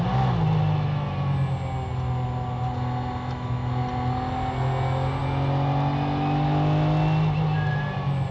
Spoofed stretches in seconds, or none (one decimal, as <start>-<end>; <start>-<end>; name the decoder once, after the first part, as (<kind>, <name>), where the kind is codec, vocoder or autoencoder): none

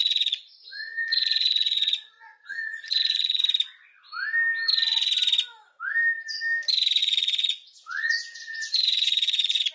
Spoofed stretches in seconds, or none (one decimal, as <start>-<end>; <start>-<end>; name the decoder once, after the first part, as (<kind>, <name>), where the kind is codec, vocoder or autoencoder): 0.0-3.4 (vocoder, Vocos); 7.0-9.7

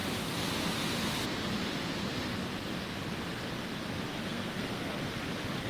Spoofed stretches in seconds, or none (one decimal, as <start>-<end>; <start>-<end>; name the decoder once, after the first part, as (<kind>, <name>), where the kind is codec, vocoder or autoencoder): 4.2-5.0 (codec, SNAC)